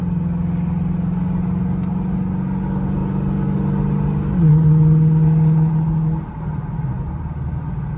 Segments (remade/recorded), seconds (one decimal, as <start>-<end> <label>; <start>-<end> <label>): 0.0-8.0 recorded